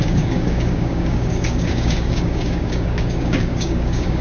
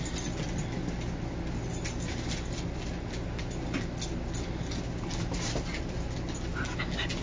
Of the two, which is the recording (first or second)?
second